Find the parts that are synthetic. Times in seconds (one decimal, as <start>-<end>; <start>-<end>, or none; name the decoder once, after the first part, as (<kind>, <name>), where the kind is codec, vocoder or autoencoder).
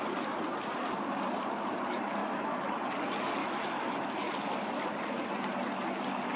2.2-2.8 (autoencoder, DAC-VAE); 3.4-4.0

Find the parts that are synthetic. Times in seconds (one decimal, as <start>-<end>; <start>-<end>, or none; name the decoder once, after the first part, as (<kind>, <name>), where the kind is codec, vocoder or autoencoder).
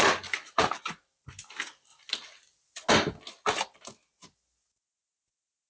none